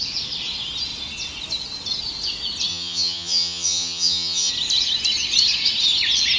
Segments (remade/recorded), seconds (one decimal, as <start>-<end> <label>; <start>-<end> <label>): 0.0-2.7 recorded; 2.7-4.5 remade; 4.5-6.4 recorded

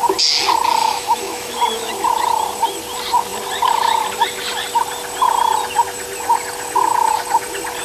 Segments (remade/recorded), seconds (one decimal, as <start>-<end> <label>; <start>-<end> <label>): 0.0-0.8 recorded; 0.8-1.9 remade; 1.9-7.8 recorded

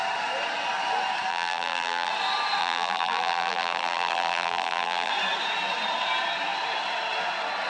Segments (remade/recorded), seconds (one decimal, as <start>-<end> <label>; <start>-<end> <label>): 0.0-1.3 recorded; 1.3-2.1 remade; 2.1-2.6 recorded; 2.6-5.1 remade; 5.1-7.7 recorded

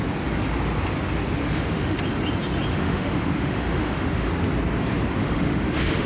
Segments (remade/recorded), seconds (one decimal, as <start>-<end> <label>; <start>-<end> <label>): 0.0-1.4 recorded; 1.4-2.0 remade; 2.0-2.7 recorded; 2.7-4.3 remade; 4.3-5.2 recorded; 5.2-6.1 remade

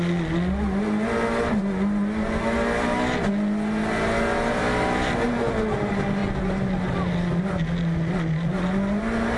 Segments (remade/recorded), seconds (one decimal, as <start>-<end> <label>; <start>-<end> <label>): 0.0-9.4 recorded

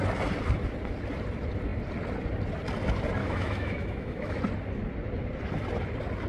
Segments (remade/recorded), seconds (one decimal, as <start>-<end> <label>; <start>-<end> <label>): 0.0-3.2 recorded; 3.2-4.4 remade; 4.4-6.3 recorded